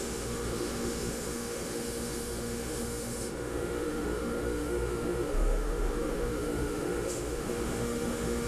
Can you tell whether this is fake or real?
fake